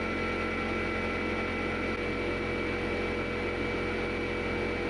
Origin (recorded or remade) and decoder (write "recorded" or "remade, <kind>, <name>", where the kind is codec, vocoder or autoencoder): recorded